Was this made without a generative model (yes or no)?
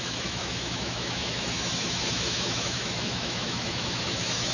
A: no